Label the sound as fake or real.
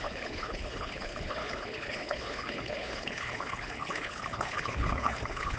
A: fake